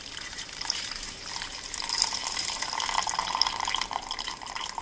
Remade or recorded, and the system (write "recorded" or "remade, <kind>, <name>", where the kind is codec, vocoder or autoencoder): remade, vocoder, BigVGAN v2